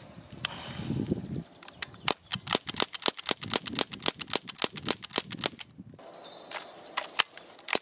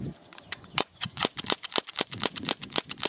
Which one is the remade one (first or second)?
second